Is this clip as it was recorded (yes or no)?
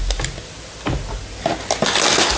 yes